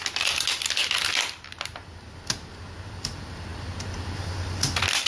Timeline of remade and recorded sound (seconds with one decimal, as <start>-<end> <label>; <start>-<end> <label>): 0.0-5.1 recorded